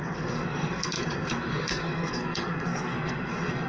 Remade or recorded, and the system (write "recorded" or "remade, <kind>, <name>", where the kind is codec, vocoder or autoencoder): remade, codec, SNAC